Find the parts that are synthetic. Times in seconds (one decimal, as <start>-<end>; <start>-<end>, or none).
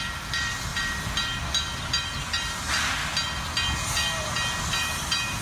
0.0-0.7; 1.4-3.0; 4.6-5.4